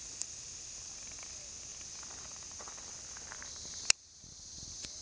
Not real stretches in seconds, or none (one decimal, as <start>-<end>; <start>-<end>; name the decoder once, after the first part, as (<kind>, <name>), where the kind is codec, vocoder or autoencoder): none